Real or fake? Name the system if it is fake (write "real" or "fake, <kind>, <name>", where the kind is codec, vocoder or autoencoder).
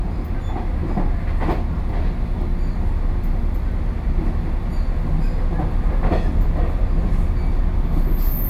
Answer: real